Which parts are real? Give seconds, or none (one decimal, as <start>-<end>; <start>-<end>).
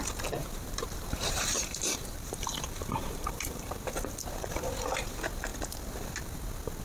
0.0-0.4; 4.1-6.8